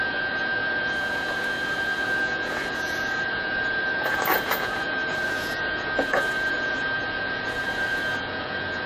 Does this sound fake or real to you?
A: fake